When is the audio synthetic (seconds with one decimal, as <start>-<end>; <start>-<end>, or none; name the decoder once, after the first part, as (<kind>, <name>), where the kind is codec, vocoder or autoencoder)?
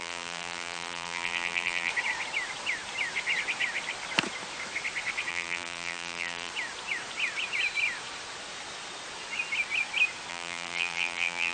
0.0-1.9 (vocoder, BigVGAN v2); 5.3-6.5; 10.3-11.5